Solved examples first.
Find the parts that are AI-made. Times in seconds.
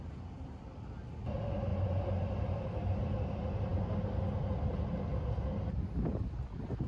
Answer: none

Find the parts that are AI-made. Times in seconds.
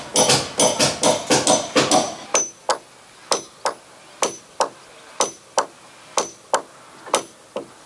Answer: none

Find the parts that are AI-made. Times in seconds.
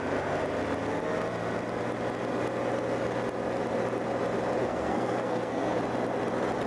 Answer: 4.6-5.8 (codec, SNAC)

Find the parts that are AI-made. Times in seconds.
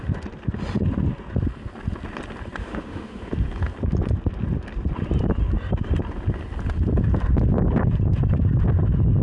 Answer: 2.6-3.3 (autoencoder, DAC-VAE)